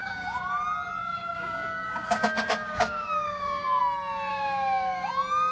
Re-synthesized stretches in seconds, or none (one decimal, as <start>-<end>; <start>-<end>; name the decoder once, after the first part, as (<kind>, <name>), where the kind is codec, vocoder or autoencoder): 0.0-0.5 (codec, DAC); 1.0-3.8; 4.3-5.1